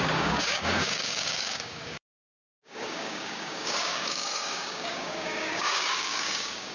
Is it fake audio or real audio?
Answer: fake